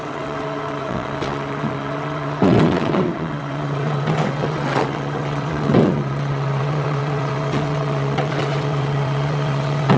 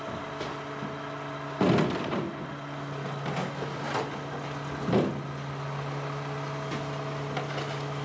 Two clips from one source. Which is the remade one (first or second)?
first